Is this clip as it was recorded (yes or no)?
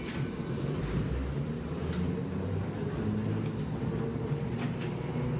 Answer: yes